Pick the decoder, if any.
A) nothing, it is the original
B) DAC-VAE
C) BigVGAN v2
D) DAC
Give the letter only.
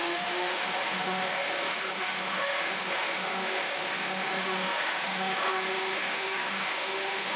B